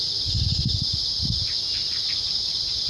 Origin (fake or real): real